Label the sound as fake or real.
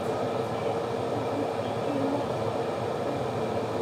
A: real